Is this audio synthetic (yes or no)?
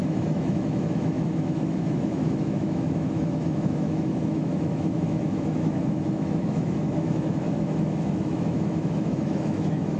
yes